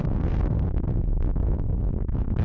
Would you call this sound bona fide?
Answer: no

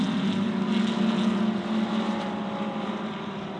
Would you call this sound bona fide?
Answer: yes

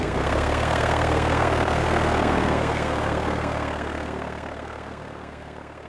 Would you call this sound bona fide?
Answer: no